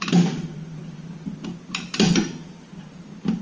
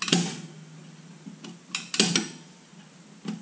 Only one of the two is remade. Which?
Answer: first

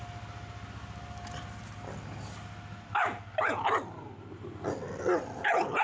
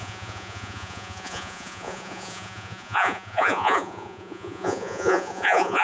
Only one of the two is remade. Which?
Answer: second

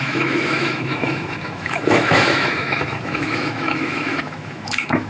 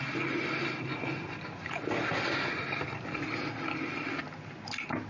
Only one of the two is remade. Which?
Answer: first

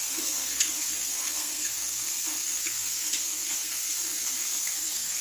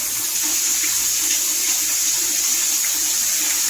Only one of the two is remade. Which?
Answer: first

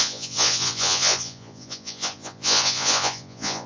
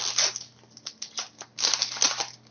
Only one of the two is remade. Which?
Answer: first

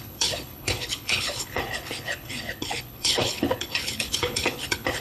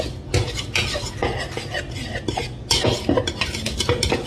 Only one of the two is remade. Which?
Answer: first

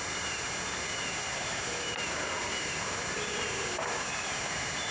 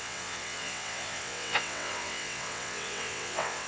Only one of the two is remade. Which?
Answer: second